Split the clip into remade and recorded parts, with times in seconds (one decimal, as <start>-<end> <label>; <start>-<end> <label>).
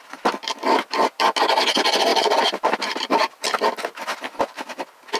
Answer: 0.0-2.1 recorded; 2.1-3.3 remade; 3.3-5.2 recorded